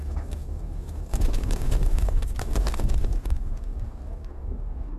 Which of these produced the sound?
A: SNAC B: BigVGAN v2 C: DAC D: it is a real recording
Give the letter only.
C